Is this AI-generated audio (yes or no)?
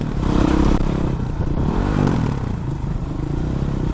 yes